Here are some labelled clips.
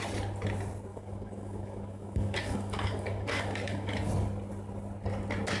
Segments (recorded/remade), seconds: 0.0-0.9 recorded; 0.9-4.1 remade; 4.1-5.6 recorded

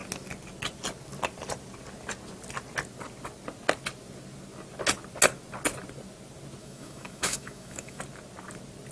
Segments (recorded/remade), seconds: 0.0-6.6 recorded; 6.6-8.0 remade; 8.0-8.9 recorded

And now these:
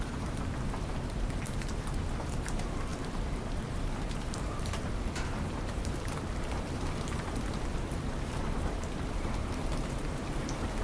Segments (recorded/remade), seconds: 0.0-10.8 remade

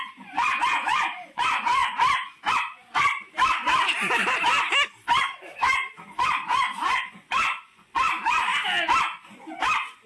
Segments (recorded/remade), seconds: 0.0-1.8 remade; 1.8-2.5 recorded; 2.5-2.9 remade; 2.9-6.1 recorded; 6.1-8.5 remade; 8.5-9.3 recorded; 9.3-10.1 remade